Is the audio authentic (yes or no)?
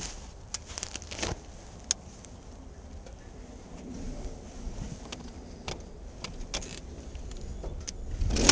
yes